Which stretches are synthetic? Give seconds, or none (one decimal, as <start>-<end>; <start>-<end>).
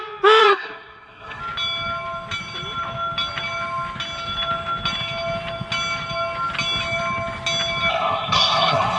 0.4-1.4; 7.9-9.0